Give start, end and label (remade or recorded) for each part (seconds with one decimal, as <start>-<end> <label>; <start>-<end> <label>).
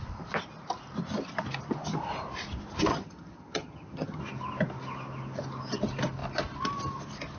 0.0-2.9 recorded; 2.9-4.2 remade; 4.2-7.4 recorded